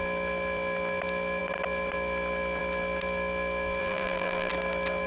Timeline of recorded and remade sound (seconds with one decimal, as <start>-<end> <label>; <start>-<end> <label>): 0.0-3.8 recorded; 3.8-4.5 remade; 4.5-5.1 recorded